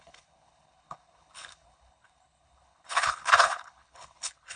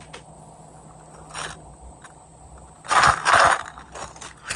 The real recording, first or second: second